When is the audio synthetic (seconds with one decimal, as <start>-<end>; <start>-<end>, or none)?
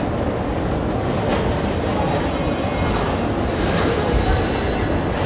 none